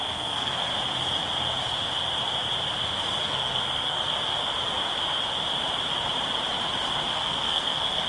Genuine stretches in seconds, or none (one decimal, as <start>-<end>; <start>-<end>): 0.7-3.2; 4.1-7.1